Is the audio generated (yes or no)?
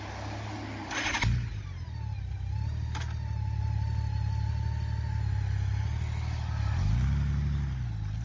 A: no